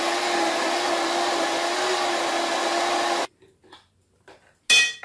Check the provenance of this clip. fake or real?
real